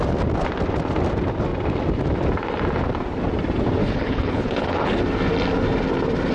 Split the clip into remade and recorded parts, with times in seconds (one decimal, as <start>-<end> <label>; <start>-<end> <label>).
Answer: 0.0-3.8 recorded; 3.8-5.0 remade; 5.0-6.3 recorded